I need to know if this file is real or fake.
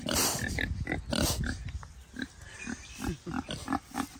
real